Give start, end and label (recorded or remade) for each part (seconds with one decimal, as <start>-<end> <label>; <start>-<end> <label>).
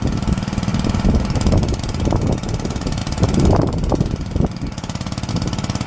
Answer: 0.0-0.7 remade; 0.7-1.8 recorded; 1.8-3.0 remade; 3.0-5.3 recorded; 5.3-5.9 remade